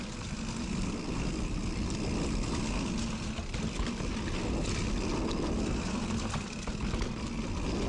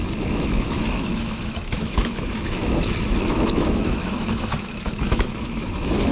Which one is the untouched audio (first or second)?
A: first